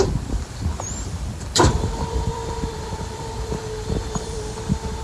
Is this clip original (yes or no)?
no